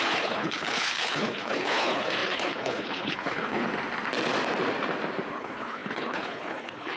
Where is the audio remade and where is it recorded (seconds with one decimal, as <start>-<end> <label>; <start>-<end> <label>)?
0.0-3.6 remade; 3.6-5.3 recorded; 5.3-7.0 remade